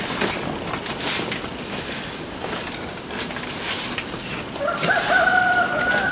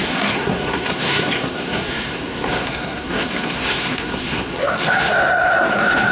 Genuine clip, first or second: first